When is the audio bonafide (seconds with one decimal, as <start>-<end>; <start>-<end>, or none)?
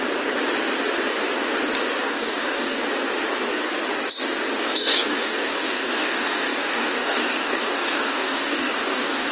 0.0-2.0; 2.8-4.6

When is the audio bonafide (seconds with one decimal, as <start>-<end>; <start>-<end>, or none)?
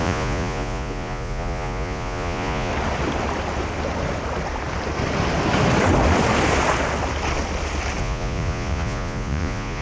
2.7-8.0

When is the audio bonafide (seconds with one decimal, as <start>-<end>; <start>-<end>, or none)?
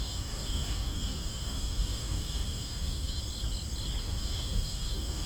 3.2-4.0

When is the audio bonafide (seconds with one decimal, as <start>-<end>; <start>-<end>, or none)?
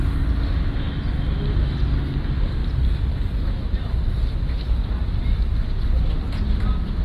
0.0-7.0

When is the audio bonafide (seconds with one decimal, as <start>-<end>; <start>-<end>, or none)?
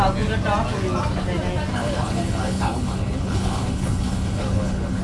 0.0-1.7